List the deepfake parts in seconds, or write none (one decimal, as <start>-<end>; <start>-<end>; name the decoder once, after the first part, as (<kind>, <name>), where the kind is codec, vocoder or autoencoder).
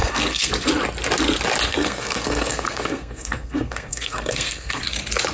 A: 0.0-0.5 (codec, SNAC); 1.7-4.8